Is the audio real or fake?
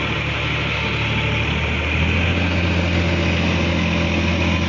real